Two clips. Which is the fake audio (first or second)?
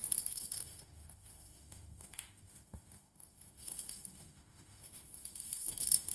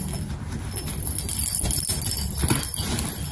first